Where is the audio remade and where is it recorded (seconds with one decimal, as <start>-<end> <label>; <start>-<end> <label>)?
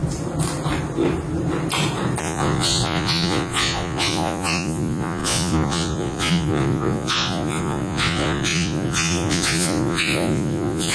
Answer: 0.0-2.2 recorded; 2.2-10.9 remade